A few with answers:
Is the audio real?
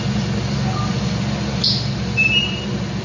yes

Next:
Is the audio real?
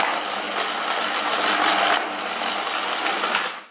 yes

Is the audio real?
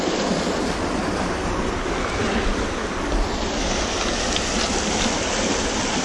yes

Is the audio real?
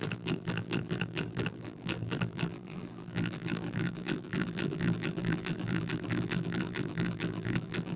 no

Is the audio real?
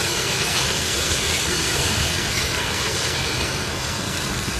no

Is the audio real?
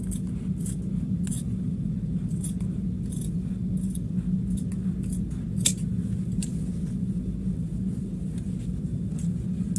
yes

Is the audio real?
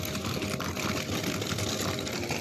yes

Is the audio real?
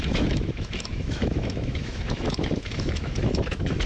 no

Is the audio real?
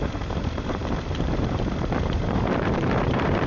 no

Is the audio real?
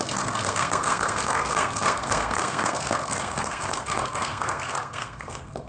no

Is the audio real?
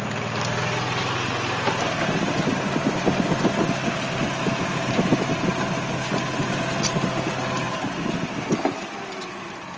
yes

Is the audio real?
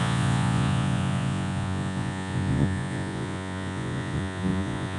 no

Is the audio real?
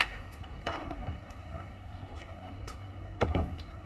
no